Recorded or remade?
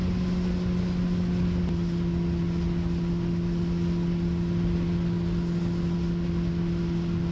recorded